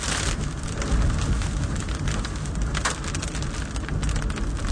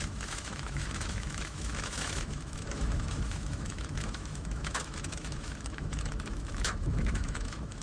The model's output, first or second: second